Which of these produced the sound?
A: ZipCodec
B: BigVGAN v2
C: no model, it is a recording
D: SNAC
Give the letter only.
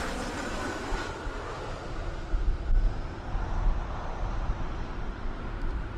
C